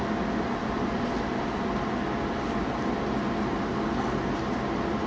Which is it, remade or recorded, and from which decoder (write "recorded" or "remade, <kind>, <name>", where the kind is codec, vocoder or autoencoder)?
recorded